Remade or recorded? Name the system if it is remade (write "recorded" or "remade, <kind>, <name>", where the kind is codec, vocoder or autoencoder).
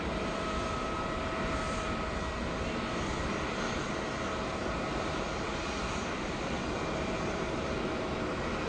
remade, vocoder, BigVGAN v2